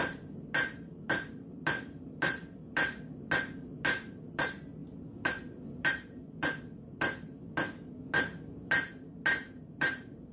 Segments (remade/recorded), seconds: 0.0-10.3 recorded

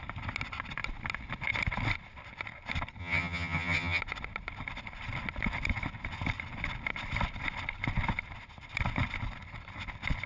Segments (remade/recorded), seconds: 0.0-3.0 recorded; 3.0-4.0 remade; 4.0-10.3 recorded

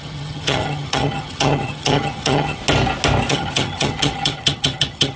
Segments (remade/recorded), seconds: 0.0-2.6 remade; 2.6-3.3 recorded; 3.3-5.2 remade

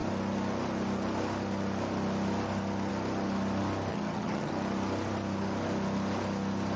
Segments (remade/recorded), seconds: 0.0-3.9 recorded; 3.9-4.5 remade; 4.5-6.8 recorded

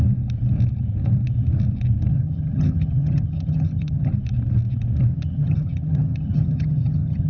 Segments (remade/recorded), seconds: 0.0-2.1 recorded; 2.1-4.1 remade; 4.1-5.1 recorded; 5.1-7.3 remade

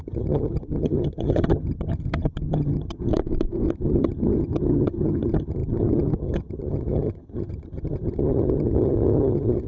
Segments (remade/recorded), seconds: 0.0-3.1 remade; 3.1-3.7 recorded; 3.7-9.7 remade

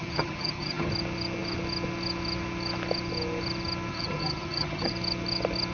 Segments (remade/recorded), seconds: 0.0-0.9 remade; 0.9-3.9 recorded; 3.9-4.9 remade; 4.9-5.7 recorded

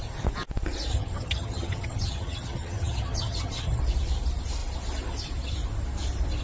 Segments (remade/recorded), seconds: 0.0-0.9 recorded; 0.9-3.8 remade; 3.8-6.4 recorded